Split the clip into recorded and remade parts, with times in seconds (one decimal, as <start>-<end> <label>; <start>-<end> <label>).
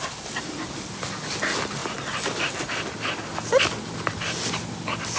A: 0.0-5.2 recorded